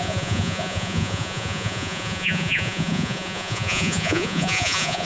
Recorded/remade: remade